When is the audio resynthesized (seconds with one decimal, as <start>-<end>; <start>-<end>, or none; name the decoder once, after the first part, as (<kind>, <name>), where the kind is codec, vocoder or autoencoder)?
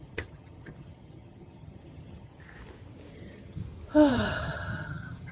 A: 0.0-2.3 (vocoder, HiFi-GAN); 3.1-3.6; 4.1-5.3